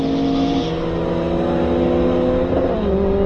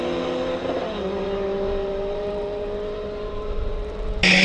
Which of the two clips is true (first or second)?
first